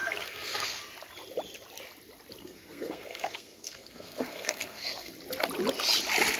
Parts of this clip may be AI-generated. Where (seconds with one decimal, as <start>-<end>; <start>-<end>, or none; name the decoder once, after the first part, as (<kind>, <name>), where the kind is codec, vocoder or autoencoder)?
0.0-0.8 (codec, SNAC); 2.4-5.1